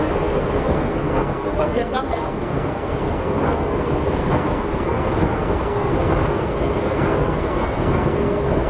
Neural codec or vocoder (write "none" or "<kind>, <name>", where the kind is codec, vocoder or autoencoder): codec, SNAC